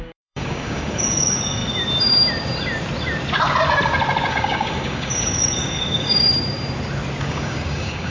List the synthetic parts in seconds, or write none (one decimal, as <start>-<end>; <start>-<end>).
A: 0.0-1.6; 4.3-6.3; 7.2-8.1